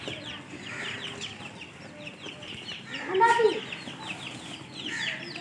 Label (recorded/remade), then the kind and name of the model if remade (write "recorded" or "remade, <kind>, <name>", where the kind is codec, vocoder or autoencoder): recorded